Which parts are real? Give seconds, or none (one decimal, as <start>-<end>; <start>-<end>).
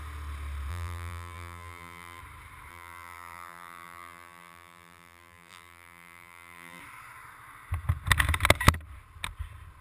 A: 0.0-0.7; 2.2-2.7; 6.8-9.8